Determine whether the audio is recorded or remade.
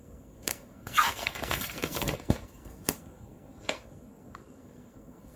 remade